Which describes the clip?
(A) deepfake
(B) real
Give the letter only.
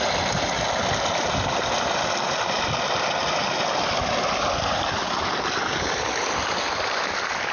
B